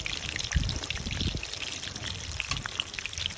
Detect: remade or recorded remade